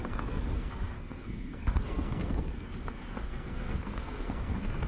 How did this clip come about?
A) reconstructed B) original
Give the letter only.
A